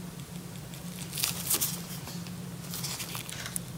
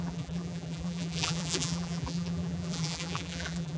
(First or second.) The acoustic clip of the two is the first